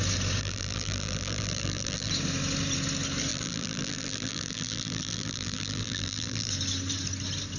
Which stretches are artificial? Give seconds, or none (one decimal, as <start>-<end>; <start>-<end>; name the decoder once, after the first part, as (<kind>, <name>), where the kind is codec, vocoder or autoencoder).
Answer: 0.4-2.1 (vocoder, BigVGAN v2); 3.3-6.5